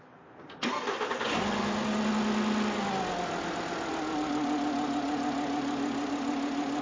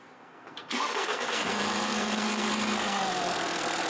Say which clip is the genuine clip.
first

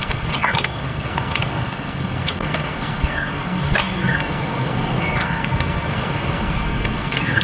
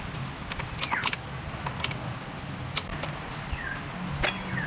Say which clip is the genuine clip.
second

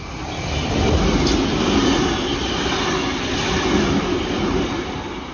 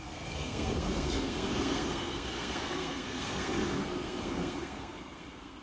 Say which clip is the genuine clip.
first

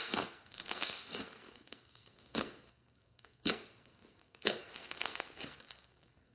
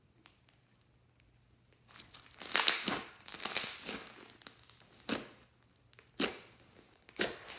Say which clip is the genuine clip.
second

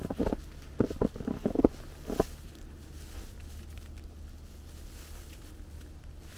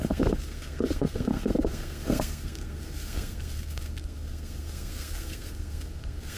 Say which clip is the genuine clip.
first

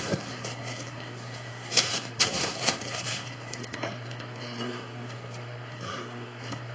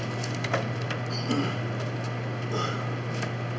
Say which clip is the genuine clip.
second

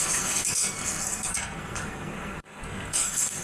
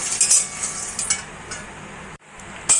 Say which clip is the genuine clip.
second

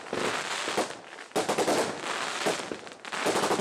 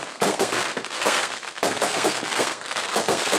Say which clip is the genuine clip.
first